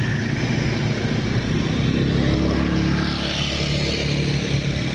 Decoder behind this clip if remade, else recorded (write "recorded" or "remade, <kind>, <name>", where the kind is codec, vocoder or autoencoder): recorded